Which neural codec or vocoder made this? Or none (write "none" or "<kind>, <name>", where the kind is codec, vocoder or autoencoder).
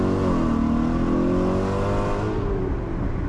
none